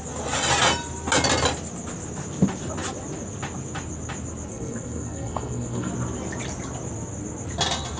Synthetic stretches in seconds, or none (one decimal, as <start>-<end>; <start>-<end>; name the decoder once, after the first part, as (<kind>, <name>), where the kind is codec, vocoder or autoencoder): 4.5-5.9 (codec, SNAC)